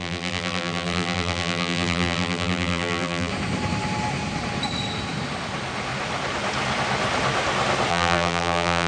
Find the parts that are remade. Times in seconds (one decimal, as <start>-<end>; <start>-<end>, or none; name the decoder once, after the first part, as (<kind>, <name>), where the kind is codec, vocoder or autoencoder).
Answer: 0.0-3.3 (vocoder, BigVGAN v2); 7.9-8.9